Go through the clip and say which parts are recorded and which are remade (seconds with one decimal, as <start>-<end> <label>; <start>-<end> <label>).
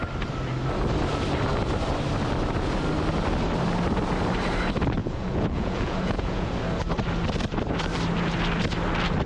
0.0-5.0 recorded; 5.0-6.5 remade; 6.5-9.3 recorded